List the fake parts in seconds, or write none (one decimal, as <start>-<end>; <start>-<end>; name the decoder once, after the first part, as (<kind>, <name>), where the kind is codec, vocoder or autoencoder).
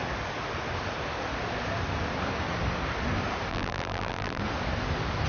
3.5-4.4 (vocoder, BigVGAN v2)